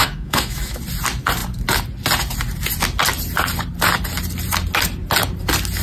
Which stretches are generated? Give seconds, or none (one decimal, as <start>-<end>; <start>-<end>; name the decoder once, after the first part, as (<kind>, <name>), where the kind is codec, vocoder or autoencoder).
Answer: 0.0-0.8 (autoencoder, DAC-VAE)